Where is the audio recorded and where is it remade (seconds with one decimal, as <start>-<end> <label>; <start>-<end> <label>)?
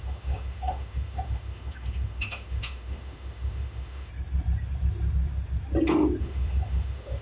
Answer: 0.0-4.1 remade; 4.1-6.2 recorded; 6.2-7.2 remade